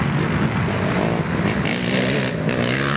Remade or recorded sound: recorded